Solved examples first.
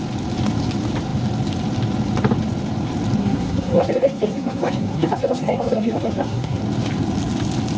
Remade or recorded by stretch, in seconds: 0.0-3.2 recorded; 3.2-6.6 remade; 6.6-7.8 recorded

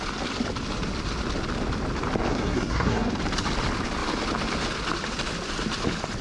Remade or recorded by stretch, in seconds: 0.0-2.3 recorded; 2.3-3.1 remade; 3.1-6.2 recorded

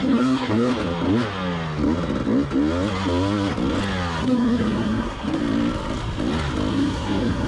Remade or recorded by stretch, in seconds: 0.0-0.7 remade; 0.7-4.2 recorded; 4.2-5.4 remade; 5.4-6.7 recorded; 6.7-7.5 remade

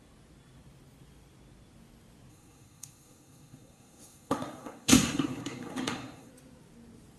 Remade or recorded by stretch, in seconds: 0.0-2.3 recorded; 2.3-6.3 remade; 6.3-7.2 recorded

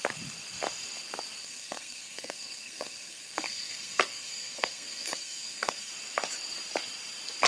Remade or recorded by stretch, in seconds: 0.0-1.4 recorded; 1.4-5.9 remade; 5.9-7.5 recorded

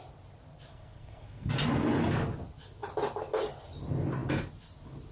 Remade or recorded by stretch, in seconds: 0.0-0.7 recorded; 0.7-1.5 remade; 1.5-5.1 recorded